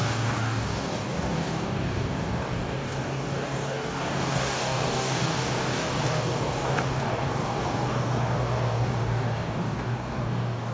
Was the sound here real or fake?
fake